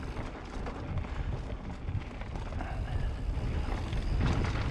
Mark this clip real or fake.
real